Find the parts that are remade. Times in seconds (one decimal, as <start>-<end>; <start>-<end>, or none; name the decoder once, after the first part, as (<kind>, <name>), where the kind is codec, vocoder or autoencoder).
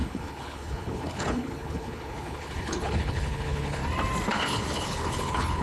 0.0-3.8 (codec, HILCodec); 4.3-5.6